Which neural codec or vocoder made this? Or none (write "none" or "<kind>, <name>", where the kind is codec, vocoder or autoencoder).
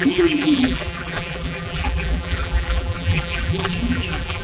vocoder, BigVGAN v2